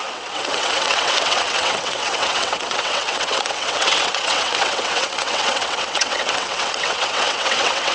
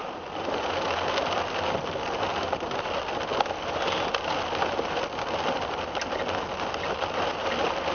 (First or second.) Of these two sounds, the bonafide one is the second